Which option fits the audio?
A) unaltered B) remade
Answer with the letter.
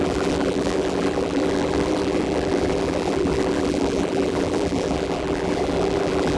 B